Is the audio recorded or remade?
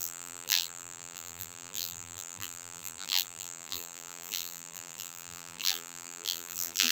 remade